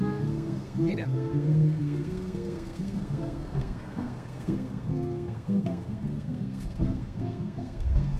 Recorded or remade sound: remade